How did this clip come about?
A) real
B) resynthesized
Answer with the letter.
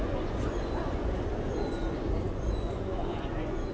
B